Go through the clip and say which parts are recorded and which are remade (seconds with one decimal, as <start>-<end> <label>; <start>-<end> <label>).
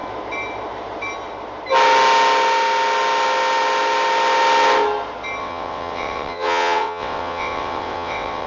0.0-5.4 recorded; 5.4-8.5 remade